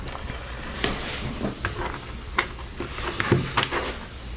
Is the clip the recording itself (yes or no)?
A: yes